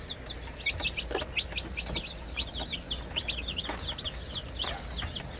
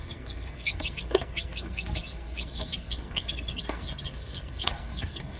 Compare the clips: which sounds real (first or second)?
first